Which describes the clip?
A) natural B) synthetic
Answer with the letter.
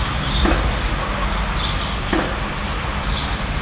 A